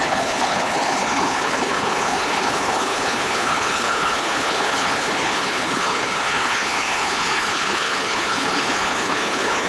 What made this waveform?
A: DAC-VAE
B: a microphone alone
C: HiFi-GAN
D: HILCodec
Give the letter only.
D